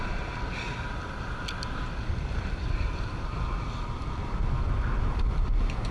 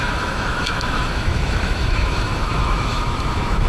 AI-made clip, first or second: second